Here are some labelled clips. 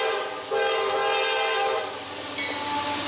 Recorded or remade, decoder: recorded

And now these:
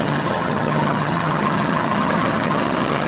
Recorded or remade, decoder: remade, vocoder, HiFi-GAN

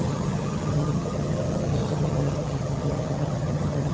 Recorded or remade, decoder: remade, vocoder, HiFi-GAN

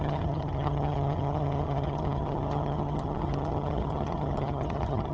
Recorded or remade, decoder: remade, vocoder, HiFi-GAN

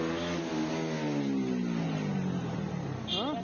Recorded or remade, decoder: recorded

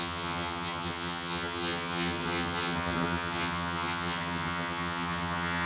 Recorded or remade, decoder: remade, vocoder, HiFi-GAN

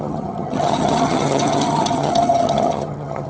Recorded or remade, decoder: remade, vocoder, HiFi-GAN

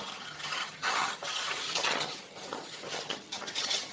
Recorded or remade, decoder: remade, vocoder, HiFi-GAN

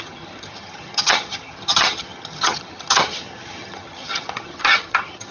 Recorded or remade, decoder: remade, vocoder, HiFi-GAN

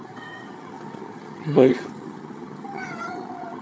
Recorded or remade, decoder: remade, vocoder, HiFi-GAN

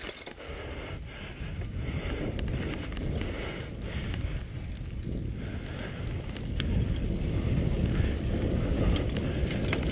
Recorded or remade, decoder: recorded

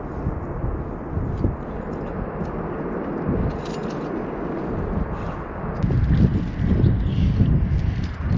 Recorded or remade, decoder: recorded